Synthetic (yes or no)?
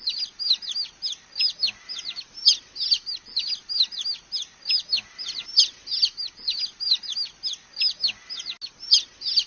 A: no